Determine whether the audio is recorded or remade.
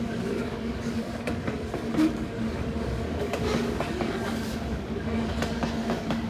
remade